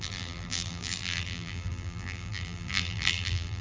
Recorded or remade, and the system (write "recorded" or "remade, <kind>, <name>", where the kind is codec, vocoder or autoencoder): remade, vocoder, BigVGAN v2